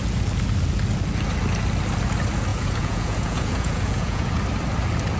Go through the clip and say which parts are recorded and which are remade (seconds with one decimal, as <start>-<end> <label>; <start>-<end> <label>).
0.0-2.5 recorded; 2.5-4.3 remade; 4.3-5.2 recorded